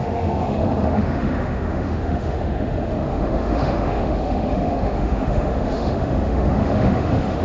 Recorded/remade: remade